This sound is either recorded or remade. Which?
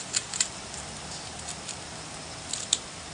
remade